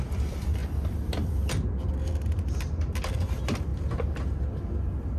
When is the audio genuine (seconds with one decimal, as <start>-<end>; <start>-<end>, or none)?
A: 0.0-5.2